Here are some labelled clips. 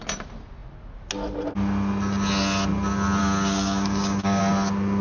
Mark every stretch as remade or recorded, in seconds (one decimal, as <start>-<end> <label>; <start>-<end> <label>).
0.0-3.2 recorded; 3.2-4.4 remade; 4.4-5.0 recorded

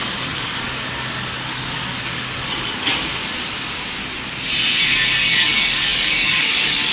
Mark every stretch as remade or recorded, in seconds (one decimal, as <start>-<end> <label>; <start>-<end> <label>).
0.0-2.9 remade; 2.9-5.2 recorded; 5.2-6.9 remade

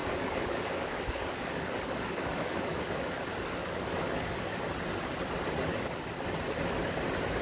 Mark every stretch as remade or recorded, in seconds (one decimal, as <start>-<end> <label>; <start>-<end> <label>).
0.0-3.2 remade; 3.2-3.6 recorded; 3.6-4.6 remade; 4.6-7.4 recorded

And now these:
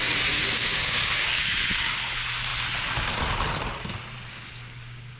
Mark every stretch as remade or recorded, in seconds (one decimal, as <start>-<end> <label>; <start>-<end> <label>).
0.0-0.4 recorded; 0.4-2.0 remade; 2.0-4.3 recorded; 4.3-5.2 remade

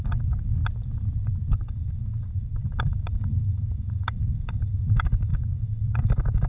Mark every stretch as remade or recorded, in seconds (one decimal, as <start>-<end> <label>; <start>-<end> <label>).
0.0-0.6 remade; 0.6-1.5 recorded; 1.5-6.5 remade

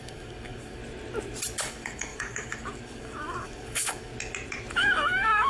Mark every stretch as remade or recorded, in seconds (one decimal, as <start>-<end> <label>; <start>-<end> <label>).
0.0-0.8 remade; 0.8-1.6 recorded; 1.6-4.1 remade; 4.1-4.7 recorded; 4.7-5.5 remade